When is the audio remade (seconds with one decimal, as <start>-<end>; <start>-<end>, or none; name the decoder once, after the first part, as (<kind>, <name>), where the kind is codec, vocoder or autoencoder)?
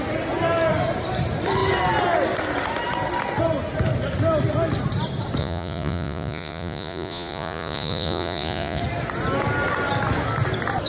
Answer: 5.4-8.8 (vocoder, Vocos)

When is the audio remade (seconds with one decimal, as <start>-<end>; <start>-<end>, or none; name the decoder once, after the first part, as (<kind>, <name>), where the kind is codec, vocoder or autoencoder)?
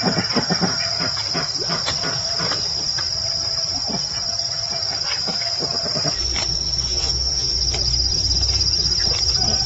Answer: 6.9-7.5 (vocoder, Vocos)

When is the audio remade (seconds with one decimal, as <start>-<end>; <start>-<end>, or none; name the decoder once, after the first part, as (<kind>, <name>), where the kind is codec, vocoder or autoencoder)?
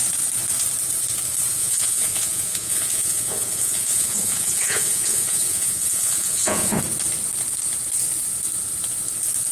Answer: 1.6-6.8 (vocoder, Vocos)